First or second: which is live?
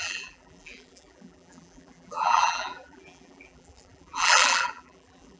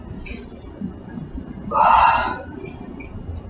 second